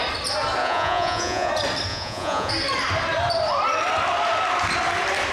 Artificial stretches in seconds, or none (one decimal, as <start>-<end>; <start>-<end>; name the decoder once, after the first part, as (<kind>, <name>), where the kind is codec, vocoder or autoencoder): 0.6-1.5 (vocoder, Vocos); 1.9-2.5